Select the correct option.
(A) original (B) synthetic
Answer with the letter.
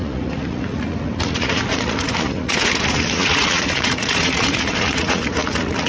B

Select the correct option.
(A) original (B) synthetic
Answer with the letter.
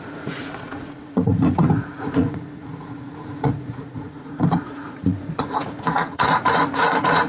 B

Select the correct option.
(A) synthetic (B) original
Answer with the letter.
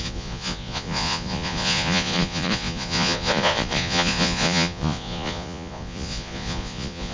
A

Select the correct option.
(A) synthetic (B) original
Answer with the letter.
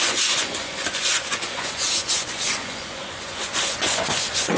A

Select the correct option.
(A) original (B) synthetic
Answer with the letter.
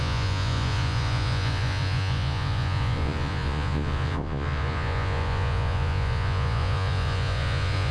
B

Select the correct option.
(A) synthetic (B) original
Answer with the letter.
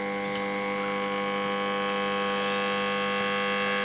B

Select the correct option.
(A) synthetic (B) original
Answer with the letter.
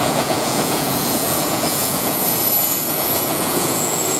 A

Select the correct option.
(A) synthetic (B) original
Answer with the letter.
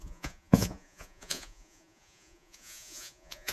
A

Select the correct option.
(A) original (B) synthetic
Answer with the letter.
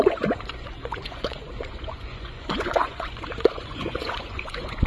B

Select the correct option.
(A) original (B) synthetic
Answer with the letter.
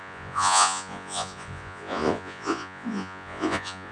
B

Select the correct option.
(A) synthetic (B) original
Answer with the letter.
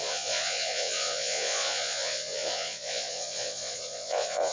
A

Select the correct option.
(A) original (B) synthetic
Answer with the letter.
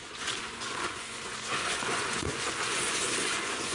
B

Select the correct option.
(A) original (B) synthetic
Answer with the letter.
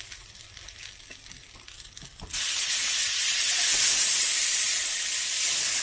A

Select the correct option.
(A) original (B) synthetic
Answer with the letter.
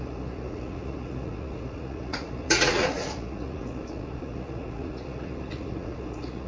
B